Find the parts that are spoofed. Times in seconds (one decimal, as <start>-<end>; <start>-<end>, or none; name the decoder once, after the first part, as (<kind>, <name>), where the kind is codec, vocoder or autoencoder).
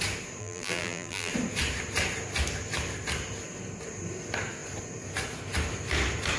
0.4-1.3 (vocoder, BigVGAN v2)